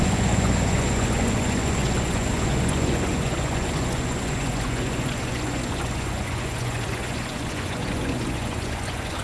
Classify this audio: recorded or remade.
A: remade